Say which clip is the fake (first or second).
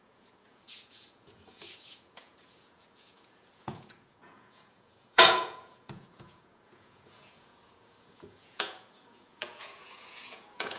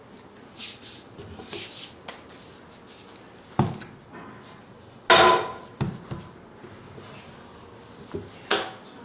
first